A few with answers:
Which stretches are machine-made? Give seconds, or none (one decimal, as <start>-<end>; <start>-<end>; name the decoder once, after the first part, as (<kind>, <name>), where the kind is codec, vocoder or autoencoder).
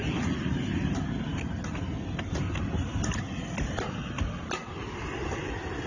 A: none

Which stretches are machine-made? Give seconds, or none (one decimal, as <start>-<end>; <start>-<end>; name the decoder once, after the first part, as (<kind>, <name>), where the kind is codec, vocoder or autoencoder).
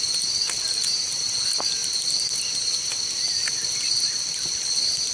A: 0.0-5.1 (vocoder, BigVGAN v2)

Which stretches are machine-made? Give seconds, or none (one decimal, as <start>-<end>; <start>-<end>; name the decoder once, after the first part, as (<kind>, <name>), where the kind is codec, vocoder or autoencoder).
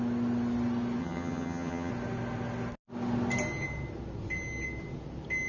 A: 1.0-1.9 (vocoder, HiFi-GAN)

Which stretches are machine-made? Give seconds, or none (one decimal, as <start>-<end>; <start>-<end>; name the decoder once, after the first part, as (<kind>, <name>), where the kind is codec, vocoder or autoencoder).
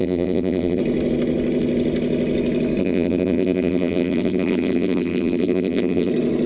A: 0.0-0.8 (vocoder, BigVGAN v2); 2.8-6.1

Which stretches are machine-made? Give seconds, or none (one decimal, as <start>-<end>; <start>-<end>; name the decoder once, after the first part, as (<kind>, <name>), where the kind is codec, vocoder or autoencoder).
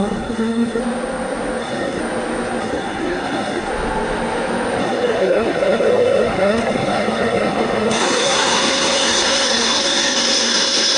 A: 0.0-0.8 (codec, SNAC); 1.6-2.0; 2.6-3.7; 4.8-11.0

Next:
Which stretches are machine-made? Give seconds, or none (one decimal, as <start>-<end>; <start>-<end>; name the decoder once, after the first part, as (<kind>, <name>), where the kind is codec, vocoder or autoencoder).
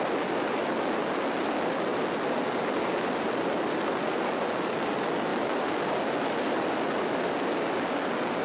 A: none